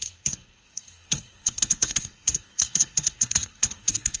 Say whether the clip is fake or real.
fake